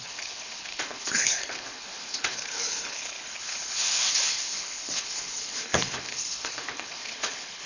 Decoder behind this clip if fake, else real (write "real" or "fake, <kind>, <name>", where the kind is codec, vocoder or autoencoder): fake, codec, HILCodec